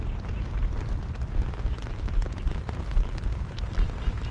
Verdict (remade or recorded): recorded